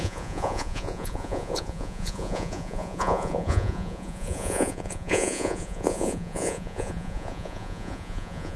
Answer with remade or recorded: remade